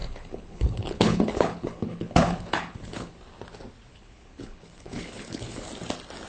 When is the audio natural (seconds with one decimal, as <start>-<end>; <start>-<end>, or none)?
3.1-3.9; 5.7-6.3